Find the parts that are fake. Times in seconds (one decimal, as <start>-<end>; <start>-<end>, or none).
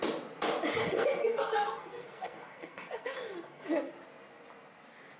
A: 0.8-3.9